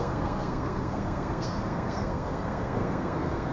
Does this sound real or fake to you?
fake